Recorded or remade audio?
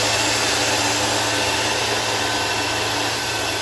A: recorded